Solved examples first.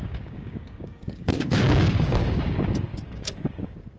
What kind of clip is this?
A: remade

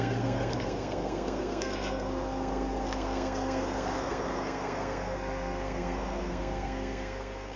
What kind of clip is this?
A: remade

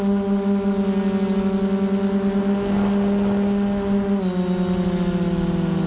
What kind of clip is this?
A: recorded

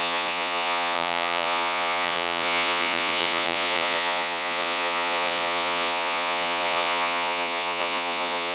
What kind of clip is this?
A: remade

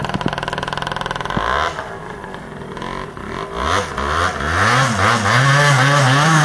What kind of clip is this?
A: recorded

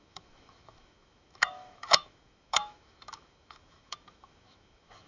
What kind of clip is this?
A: remade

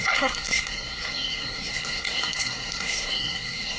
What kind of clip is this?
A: remade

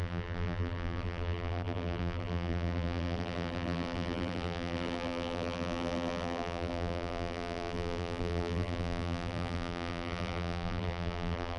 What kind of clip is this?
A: remade